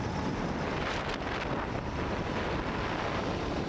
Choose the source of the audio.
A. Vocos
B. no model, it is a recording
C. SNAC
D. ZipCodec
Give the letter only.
B